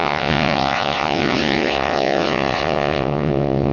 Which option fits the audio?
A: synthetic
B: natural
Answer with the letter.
A